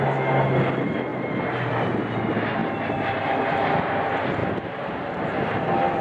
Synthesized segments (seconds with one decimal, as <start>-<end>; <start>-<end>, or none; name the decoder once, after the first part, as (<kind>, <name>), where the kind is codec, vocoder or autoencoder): none